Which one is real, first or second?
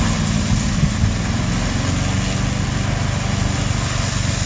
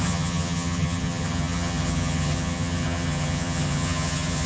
first